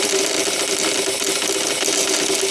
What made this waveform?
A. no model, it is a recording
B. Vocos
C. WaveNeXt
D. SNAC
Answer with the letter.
A